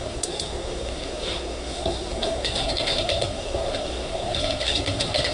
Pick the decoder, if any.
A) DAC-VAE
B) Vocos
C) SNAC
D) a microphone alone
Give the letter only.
C